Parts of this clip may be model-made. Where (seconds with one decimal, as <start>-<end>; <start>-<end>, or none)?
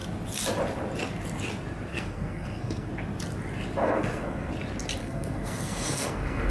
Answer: 1.9-2.9; 3.8-4.5; 5.0-6.5